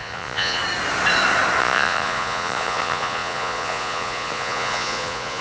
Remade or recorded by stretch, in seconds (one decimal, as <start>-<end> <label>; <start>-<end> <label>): 0.0-0.6 remade; 0.6-1.6 recorded; 1.6-5.4 remade